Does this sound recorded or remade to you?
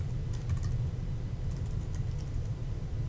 recorded